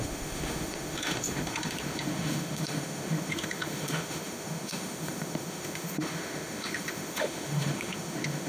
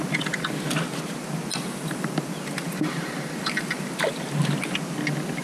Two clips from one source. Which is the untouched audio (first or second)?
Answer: second